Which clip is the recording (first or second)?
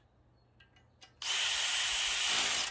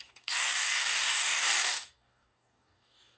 first